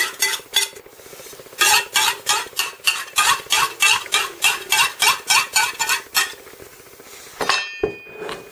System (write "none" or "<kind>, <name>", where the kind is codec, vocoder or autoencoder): none